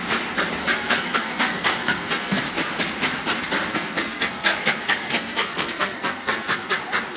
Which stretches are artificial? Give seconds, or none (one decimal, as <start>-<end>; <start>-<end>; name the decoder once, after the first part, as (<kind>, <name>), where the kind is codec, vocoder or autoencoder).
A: 0.6-2.4 (codec, SNAC); 3.7-6.8